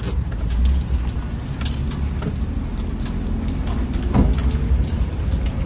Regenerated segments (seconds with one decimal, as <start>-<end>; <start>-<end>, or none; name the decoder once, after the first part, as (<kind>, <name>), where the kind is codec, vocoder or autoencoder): none